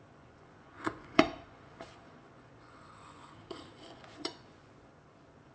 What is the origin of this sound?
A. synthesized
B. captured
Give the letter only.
A